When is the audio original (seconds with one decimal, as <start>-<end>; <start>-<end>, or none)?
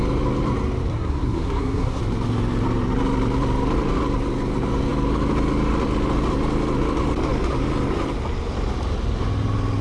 0.0-0.9; 2.0-9.8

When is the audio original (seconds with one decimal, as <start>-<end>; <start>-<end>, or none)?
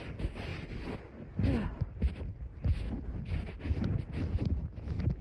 0.0-5.2